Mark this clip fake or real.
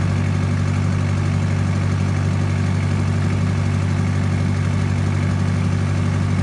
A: real